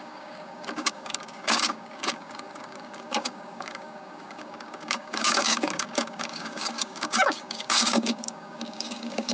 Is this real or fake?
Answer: fake